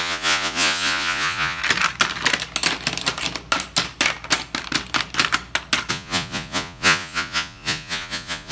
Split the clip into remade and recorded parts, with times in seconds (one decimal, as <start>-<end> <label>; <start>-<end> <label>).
0.0-1.6 remade; 1.6-5.9 recorded; 5.9-8.5 remade